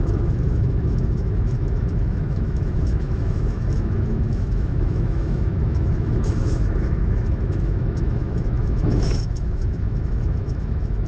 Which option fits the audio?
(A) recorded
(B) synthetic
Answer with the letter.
B